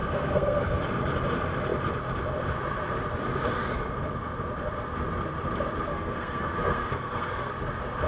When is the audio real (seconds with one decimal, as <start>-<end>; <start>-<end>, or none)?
0.8-5.9; 7.5-8.1